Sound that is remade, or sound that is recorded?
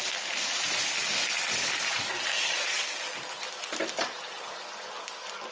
recorded